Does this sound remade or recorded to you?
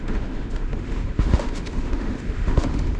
remade